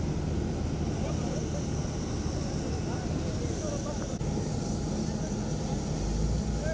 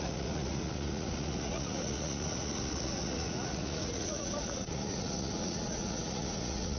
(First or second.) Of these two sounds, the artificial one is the second